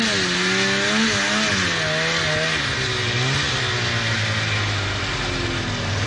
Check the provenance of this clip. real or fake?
real